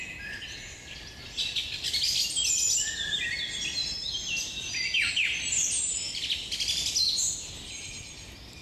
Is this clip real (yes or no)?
yes